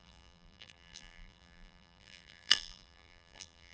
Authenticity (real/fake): fake